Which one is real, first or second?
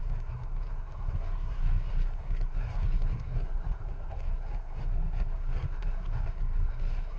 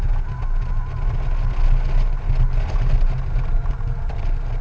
second